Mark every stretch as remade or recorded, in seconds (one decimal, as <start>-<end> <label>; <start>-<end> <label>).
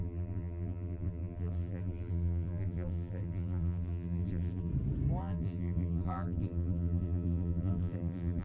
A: 0.0-4.7 remade; 4.7-5.2 recorded; 5.2-8.4 remade